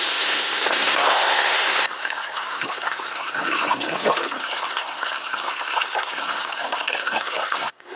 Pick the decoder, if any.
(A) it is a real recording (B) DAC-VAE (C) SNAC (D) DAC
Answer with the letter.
C